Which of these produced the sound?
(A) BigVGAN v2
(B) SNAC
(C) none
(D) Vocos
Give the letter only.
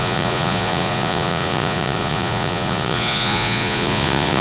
D